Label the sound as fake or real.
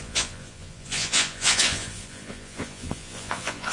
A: fake